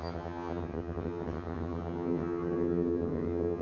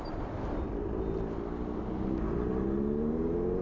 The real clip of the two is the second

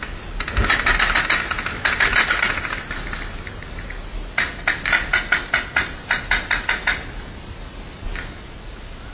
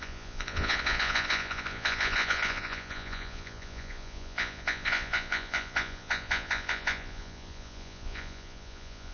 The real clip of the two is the first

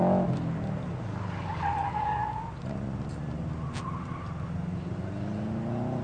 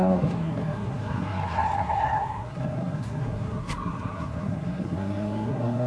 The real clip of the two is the first